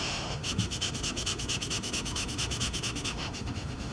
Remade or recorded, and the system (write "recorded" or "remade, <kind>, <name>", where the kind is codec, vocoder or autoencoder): remade, autoencoder, DAC-VAE